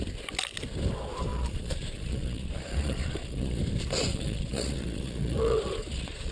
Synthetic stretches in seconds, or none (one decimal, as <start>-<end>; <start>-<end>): 1.3-3.6; 4.1-6.3